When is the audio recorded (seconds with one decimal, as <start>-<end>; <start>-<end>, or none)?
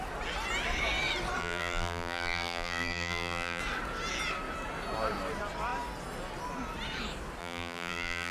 0.0-1.4; 3.6-7.4